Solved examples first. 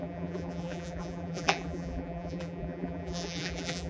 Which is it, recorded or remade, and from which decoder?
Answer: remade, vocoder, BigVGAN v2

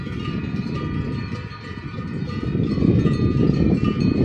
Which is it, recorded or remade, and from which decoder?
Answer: remade, vocoder, BigVGAN v2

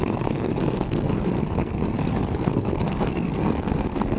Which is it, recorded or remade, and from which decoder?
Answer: remade, codec, SNAC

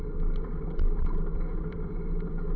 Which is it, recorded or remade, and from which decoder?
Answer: recorded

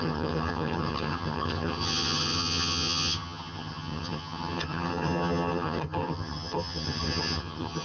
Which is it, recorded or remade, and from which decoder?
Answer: remade, vocoder, HiFi-GAN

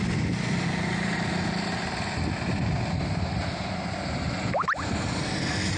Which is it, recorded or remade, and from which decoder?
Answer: recorded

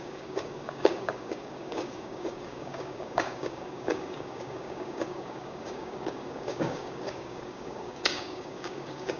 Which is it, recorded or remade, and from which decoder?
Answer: remade, codec, DAC